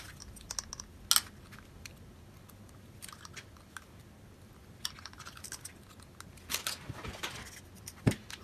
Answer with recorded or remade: recorded